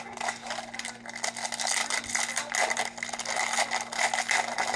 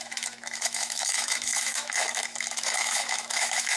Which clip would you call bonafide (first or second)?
first